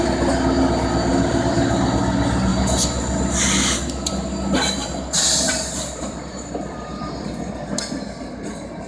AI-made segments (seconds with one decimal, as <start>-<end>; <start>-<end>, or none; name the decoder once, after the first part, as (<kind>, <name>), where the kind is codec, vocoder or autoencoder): 1.1-2.0 (vocoder, BigVGAN v2); 4.8-7.5

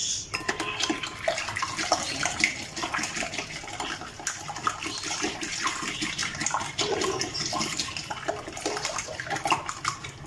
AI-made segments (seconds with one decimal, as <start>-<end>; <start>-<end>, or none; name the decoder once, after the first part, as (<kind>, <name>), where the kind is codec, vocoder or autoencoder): none